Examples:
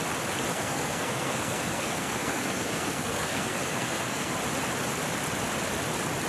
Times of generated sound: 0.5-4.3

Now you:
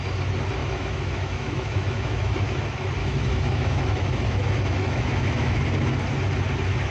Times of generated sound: 0.6-2.6; 3.0-5.6

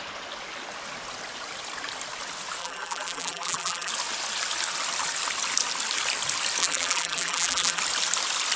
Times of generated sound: 2.6-3.9; 6.6-7.8